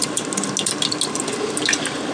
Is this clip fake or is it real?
real